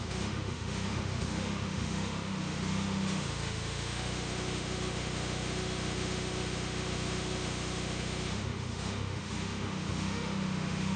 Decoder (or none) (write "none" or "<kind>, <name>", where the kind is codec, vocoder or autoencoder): autoencoder, DAC-VAE